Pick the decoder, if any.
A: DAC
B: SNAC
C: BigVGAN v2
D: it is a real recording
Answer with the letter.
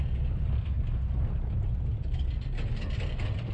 D